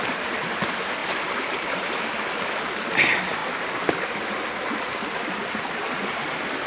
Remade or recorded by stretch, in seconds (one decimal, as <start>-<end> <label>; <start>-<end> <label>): 0.0-1.0 recorded; 1.0-2.6 remade; 2.6-6.7 recorded